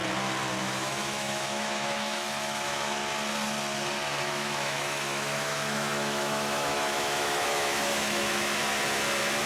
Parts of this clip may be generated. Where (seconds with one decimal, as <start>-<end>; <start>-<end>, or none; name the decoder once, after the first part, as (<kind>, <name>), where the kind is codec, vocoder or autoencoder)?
0.6-3.0 (autoencoder, DAC-VAE); 4.2-8.6